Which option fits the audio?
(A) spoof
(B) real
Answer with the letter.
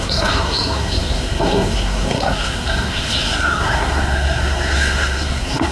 A